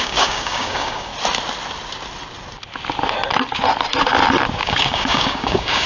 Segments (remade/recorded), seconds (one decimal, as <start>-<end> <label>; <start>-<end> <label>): 0.0-1.1 remade; 1.1-4.6 recorded; 4.6-5.9 remade